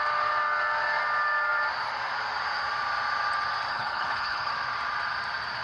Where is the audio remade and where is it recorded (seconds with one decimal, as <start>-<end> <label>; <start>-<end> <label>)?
0.0-3.7 recorded; 3.7-4.5 remade; 4.5-5.6 recorded